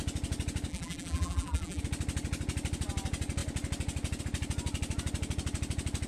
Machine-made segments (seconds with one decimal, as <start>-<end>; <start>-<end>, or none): 0.7-1.8